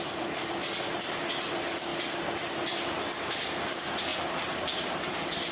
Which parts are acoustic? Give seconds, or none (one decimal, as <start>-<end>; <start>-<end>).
0.0-5.5